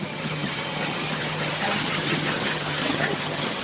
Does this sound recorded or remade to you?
remade